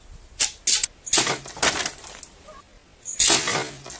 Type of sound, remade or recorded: recorded